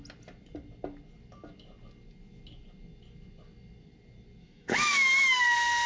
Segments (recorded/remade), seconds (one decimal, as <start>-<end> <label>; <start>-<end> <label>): 0.0-4.4 recorded; 4.4-5.4 remade; 5.4-5.9 recorded